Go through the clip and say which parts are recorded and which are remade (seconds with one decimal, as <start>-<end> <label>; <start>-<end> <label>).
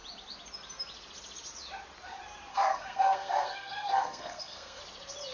0.0-2.5 recorded; 2.5-4.8 remade; 4.8-5.3 recorded